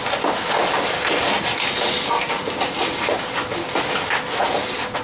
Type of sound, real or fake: real